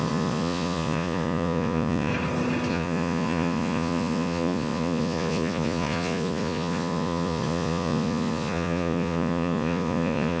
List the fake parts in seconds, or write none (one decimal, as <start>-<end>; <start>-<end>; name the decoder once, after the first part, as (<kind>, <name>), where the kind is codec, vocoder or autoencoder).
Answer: 0.0-2.1 (vocoder, Vocos); 2.7-10.4